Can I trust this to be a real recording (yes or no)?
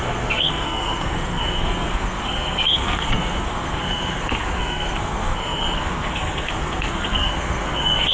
no